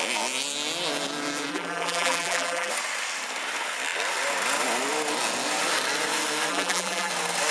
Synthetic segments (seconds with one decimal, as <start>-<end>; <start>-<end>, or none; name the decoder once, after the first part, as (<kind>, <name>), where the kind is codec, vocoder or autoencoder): 1.5-2.7 (vocoder, BigVGAN v2); 6.5-7.1